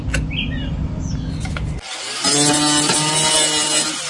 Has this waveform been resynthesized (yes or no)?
no